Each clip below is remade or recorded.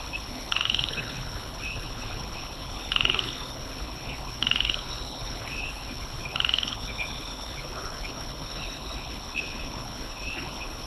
remade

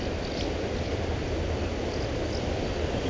recorded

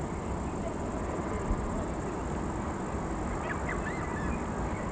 recorded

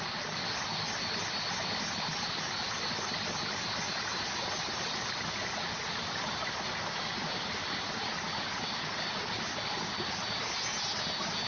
recorded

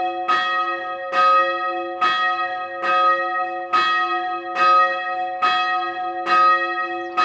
recorded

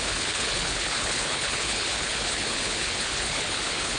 remade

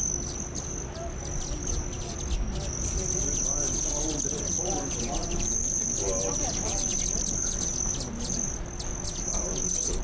recorded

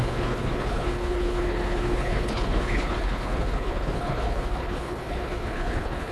remade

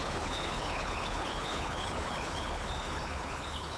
remade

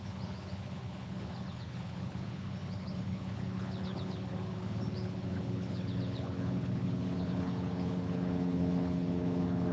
remade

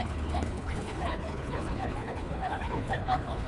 remade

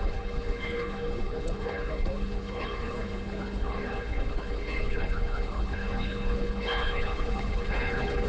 remade